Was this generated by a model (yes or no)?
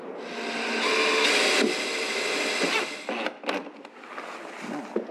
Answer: no